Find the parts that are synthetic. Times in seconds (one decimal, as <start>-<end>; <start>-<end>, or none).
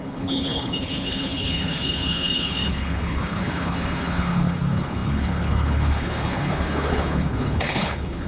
0.0-8.3